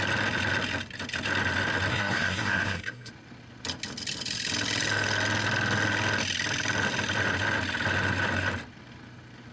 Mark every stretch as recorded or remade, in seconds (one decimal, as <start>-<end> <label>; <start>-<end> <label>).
0.0-1.9 recorded; 1.9-3.1 remade; 3.1-9.5 recorded